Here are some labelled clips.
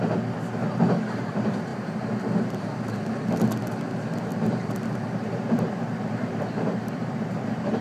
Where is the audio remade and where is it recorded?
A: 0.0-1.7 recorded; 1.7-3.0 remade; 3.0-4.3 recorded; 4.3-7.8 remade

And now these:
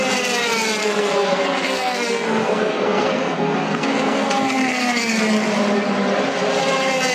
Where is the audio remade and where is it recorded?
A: 0.0-0.8 recorded; 0.8-5.1 remade; 5.1-7.1 recorded

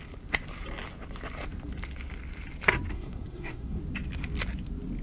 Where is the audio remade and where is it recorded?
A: 0.0-2.9 recorded; 2.9-3.8 remade; 3.8-5.0 recorded

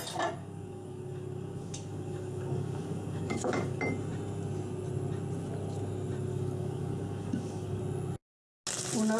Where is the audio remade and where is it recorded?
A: 0.0-0.4 recorded; 0.4-3.8 remade; 3.8-6.3 recorded; 6.3-7.8 remade; 7.8-9.2 recorded

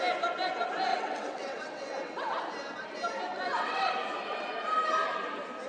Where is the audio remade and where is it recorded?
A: 0.0-0.9 recorded; 0.9-2.4 remade; 2.4-3.3 recorded; 3.3-3.9 remade; 3.9-5.7 recorded